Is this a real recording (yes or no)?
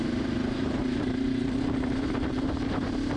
no